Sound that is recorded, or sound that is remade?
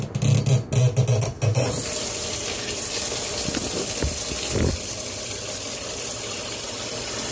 recorded